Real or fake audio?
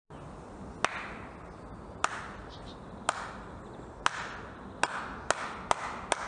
real